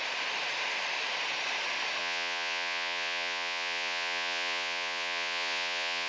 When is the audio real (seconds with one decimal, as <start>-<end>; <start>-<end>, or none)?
0.0-2.0